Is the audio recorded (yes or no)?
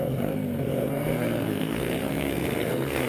no